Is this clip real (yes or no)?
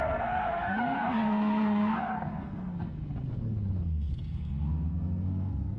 no